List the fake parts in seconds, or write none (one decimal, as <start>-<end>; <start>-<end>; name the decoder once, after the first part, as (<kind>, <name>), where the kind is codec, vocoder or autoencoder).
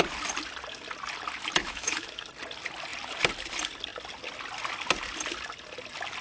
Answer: 1.6-2.2 (autoencoder, DAC-VAE)